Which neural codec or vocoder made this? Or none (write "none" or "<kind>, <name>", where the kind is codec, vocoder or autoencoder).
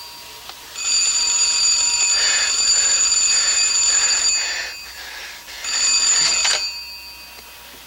none